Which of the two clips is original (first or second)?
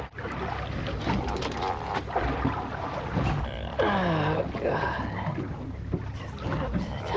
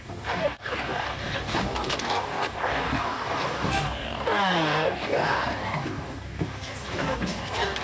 first